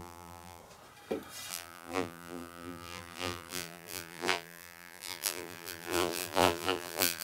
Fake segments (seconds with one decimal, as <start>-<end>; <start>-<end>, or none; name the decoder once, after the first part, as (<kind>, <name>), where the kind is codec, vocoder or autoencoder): 0.0-0.6 (vocoder, BigVGAN v2); 1.5-7.2